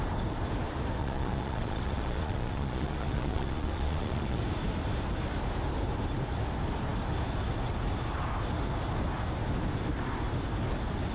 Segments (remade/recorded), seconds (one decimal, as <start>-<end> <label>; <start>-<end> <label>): 0.0-1.0 recorded; 1.0-4.4 remade; 4.4-11.1 recorded